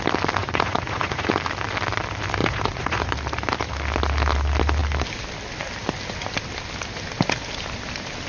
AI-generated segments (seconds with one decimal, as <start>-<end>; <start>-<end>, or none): 0.4-1.3; 2.4-3.1